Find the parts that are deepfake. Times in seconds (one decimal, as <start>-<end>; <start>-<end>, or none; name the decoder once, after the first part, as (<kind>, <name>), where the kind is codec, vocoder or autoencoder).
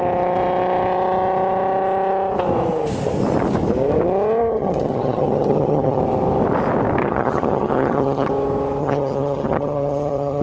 4.4-6.0 (vocoder, HiFi-GAN); 7.0-8.3; 8.8-10.4